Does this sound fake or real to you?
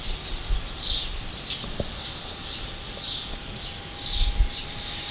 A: real